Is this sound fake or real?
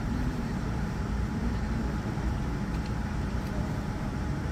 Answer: fake